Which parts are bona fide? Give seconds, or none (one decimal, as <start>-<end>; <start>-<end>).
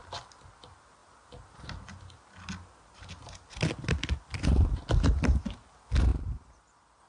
0.0-6.1